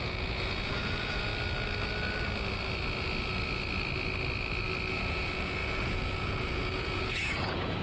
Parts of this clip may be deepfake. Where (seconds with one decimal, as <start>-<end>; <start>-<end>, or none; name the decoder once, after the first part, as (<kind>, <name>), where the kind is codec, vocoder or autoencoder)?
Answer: 0.0-1.3 (vocoder, Vocos); 4.9-7.8